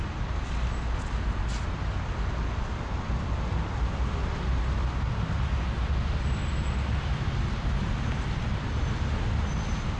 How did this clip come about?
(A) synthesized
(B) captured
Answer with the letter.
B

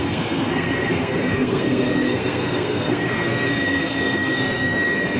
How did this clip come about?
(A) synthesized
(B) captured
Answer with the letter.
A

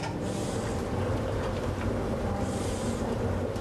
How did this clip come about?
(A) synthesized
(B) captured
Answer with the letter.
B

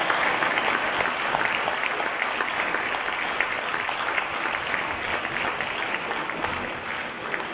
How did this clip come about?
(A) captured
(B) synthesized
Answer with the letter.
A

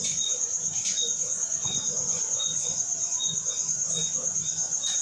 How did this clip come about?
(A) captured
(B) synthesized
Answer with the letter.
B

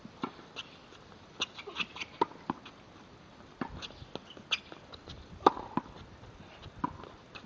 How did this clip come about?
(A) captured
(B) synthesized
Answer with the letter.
A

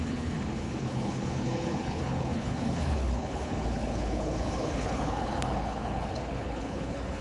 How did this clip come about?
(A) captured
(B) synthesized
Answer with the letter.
B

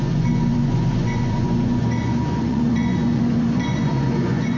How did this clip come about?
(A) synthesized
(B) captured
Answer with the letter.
A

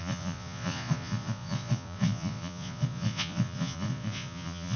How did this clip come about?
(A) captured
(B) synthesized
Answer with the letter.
B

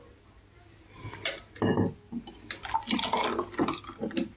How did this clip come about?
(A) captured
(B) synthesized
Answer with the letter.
A